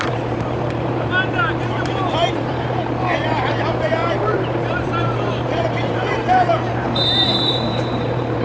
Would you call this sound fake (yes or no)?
yes